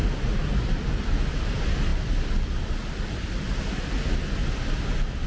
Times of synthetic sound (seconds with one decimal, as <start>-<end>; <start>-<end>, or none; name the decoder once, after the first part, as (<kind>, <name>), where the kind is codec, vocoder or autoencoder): none